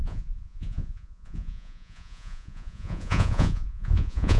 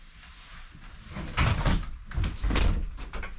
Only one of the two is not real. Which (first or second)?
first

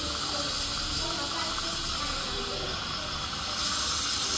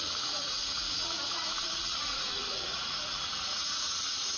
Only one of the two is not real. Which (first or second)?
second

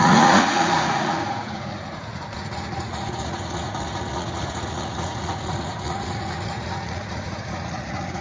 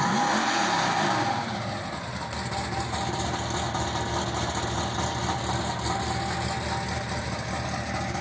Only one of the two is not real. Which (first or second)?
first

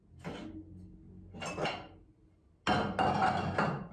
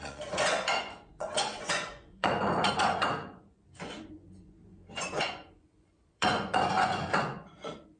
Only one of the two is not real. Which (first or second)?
second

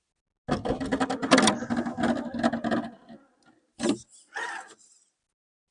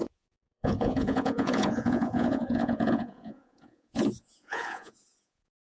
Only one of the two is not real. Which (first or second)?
second